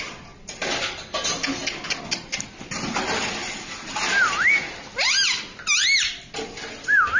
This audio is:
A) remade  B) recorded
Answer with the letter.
B